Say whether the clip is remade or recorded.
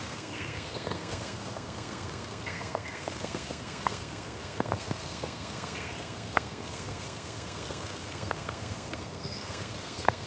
remade